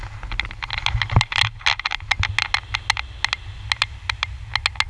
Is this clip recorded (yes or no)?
yes